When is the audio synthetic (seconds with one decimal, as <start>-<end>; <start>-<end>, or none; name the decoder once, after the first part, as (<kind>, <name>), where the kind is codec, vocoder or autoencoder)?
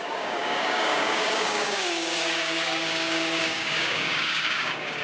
0.0-5.0 (codec, DAC)